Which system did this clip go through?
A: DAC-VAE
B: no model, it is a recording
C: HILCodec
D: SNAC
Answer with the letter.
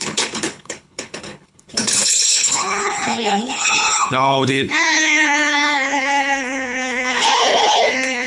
C